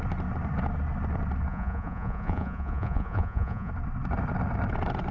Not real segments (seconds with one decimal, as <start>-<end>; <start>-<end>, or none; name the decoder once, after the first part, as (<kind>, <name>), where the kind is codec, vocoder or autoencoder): 1.5-3.7 (vocoder, Vocos)